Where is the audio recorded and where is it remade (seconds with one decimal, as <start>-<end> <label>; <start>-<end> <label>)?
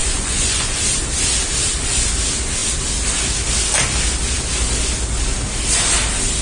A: 0.0-0.8 remade; 0.8-6.4 recorded